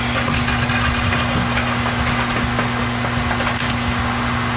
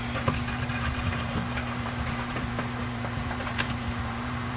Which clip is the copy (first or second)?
second